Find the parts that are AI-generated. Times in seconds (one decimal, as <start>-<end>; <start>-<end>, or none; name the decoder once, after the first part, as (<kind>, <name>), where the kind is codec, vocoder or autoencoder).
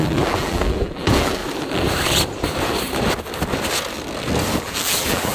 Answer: 0.0-1.4 (vocoder, BigVGAN v2); 4.6-5.3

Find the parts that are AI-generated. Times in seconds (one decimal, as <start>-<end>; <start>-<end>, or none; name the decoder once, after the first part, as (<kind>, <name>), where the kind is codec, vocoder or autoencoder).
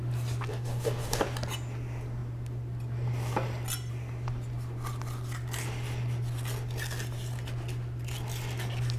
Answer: 0.5-1.2 (codec, DAC)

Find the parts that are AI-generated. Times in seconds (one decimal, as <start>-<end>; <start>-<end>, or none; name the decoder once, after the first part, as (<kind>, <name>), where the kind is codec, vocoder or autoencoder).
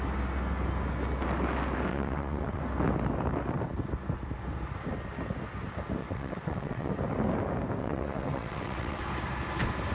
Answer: 1.9-2.6 (vocoder, WaveNeXt); 6.0-6.9; 7.8-9.0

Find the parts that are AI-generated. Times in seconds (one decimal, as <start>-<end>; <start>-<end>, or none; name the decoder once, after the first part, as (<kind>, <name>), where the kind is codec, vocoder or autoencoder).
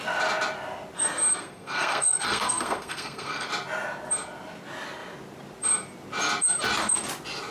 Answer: 1.3-3.5 (codec, SNAC)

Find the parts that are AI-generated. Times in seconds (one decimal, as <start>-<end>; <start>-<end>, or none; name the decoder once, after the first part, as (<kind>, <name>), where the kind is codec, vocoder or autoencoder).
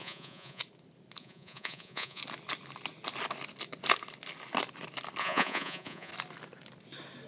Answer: 0.0-0.6 (vocoder, Vocos); 1.2-2.2; 5.2-6.1